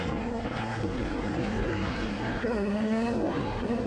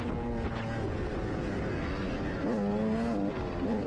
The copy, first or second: first